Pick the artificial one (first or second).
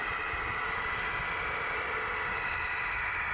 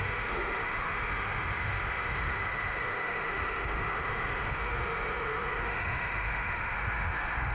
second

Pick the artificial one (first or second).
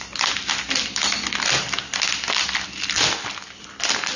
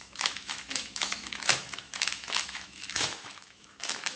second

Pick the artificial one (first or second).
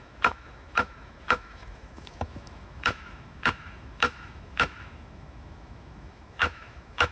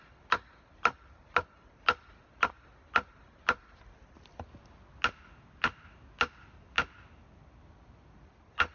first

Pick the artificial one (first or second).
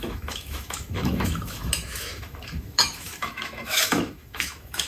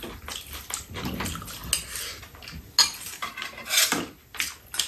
first